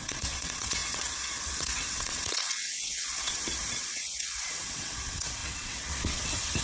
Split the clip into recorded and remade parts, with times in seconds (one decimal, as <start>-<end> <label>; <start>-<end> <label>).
0.0-6.6 remade